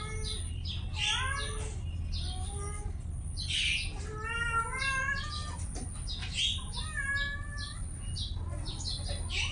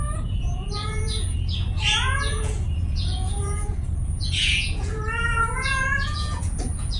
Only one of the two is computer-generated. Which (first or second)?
second